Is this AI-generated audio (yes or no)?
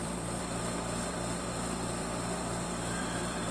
yes